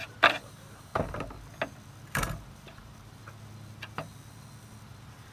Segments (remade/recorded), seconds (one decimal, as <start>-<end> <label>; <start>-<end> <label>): 0.0-0.9 remade; 0.9-2.0 recorded; 2.0-3.2 remade; 3.2-4.8 recorded; 4.8-5.3 remade